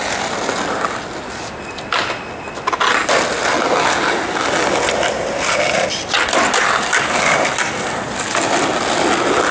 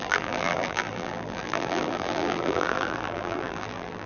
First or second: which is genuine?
first